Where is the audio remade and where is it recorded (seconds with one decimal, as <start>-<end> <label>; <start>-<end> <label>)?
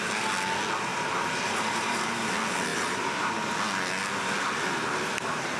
0.0-0.9 recorded; 0.9-2.3 remade; 2.3-2.7 recorded; 2.7-3.3 remade; 3.3-4.8 recorded; 4.8-5.6 remade